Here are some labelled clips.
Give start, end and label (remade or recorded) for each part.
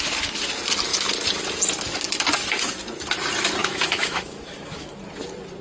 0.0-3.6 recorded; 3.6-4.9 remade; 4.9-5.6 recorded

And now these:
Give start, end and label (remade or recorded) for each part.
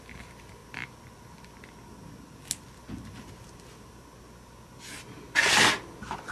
0.0-6.3 recorded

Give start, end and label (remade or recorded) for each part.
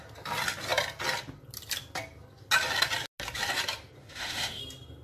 0.0-4.0 recorded; 4.0-4.6 remade; 4.6-5.0 recorded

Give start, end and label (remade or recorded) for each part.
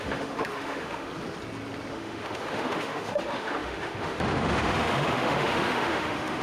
0.0-1.1 remade; 1.1-1.9 recorded; 1.9-6.4 remade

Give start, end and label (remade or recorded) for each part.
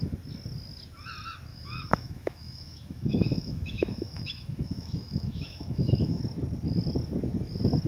0.0-1.5 recorded; 1.5-6.2 remade; 6.2-7.9 recorded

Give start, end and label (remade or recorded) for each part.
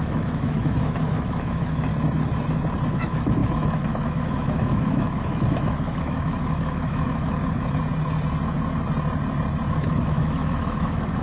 0.0-1.9 remade; 1.9-2.9 recorded; 2.9-7.4 remade; 7.4-9.7 recorded; 9.7-11.2 remade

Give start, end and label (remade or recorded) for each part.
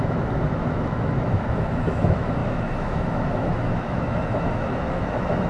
0.0-5.5 remade